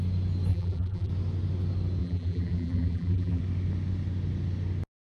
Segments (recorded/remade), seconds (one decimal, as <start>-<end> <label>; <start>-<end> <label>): 0.0-0.5 recorded; 0.5-1.1 remade; 1.1-2.0 recorded; 2.0-3.4 remade; 3.4-5.1 recorded